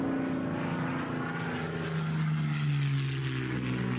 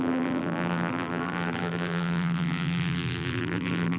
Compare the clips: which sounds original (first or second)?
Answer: first